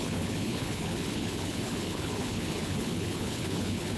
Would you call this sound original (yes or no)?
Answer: no